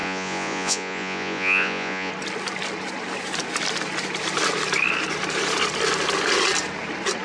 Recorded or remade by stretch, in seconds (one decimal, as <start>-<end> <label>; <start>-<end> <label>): 0.0-2.1 remade; 2.1-7.2 recorded